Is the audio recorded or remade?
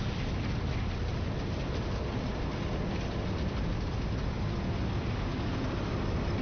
recorded